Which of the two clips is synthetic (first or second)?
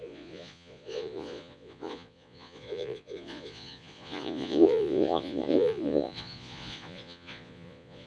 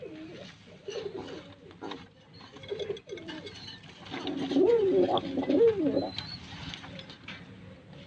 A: first